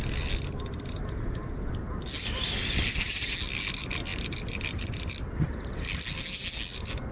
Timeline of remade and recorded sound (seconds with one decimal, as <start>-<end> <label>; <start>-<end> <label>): 0.0-7.1 recorded